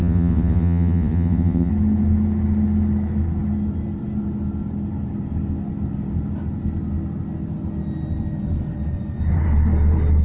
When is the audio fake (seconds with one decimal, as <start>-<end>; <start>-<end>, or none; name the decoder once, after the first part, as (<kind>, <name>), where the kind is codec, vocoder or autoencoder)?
0.0-1.7 (vocoder, WaveNeXt)